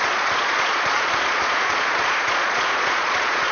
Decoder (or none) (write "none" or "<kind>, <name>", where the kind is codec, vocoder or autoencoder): vocoder, Vocos